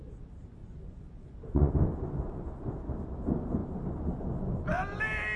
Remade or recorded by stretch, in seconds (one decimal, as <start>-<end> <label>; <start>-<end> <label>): 0.0-0.6 recorded; 0.6-1.7 remade; 1.7-5.4 recorded